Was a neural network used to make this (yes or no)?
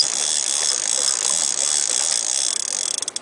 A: no